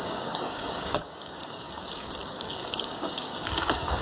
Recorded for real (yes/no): no